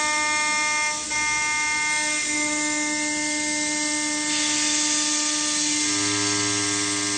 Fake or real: real